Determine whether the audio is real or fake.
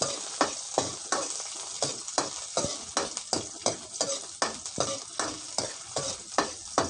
real